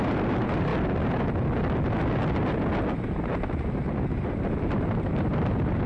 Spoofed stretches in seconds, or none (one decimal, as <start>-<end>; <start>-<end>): 0.0-0.7; 3.9-5.9